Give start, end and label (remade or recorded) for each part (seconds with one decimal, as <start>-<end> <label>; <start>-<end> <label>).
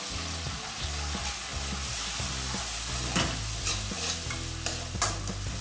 0.0-5.6 recorded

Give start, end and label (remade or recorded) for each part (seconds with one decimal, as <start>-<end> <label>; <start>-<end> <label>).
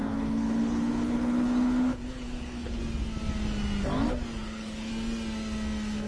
0.0-2.8 remade; 2.8-4.4 recorded; 4.4-4.9 remade; 4.9-6.1 recorded